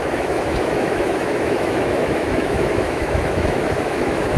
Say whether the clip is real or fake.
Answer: fake